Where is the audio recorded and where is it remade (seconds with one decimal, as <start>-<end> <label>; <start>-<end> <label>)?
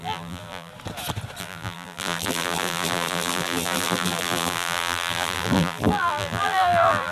0.0-0.7 remade; 0.7-1.4 recorded; 1.4-7.1 remade